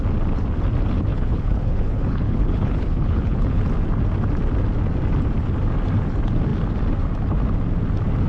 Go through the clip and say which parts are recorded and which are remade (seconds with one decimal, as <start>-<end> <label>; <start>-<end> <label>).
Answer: 0.0-1.1 recorded; 1.1-3.6 remade; 3.6-8.3 recorded

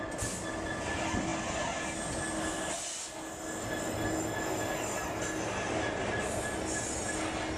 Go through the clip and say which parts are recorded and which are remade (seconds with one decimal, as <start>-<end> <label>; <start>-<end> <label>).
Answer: 0.0-7.6 recorded

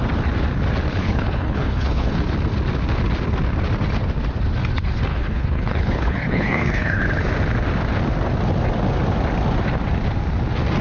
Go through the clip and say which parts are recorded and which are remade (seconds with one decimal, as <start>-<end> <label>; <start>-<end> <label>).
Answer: 0.0-1.0 recorded; 1.0-2.1 remade; 2.1-5.1 recorded; 5.1-7.0 remade; 7.0-10.8 recorded

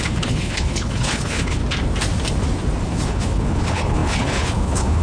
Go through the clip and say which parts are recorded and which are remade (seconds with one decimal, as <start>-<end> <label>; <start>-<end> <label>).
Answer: 0.0-1.6 remade; 1.6-2.8 recorded; 2.8-5.0 remade